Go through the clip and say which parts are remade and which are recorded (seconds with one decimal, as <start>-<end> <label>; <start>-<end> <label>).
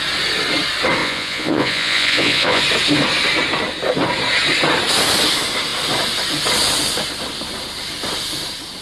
0.0-1.0 recorded; 1.0-2.6 remade; 2.6-8.8 recorded